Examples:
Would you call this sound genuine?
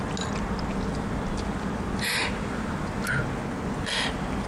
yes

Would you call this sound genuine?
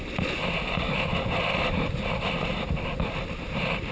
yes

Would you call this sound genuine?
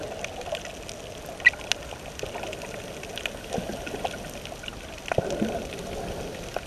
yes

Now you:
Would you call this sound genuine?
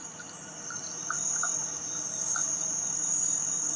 no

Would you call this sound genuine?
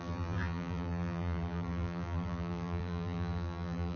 no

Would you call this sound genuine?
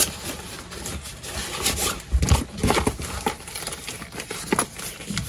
yes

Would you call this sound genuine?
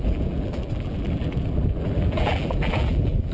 no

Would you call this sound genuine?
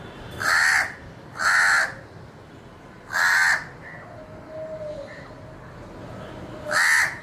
yes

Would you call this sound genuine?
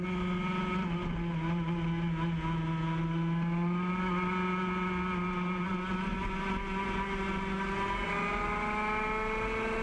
yes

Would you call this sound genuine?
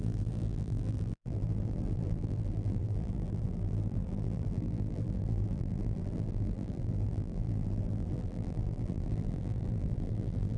no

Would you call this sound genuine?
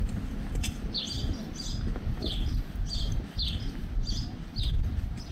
yes